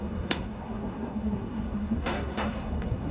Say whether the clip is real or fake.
fake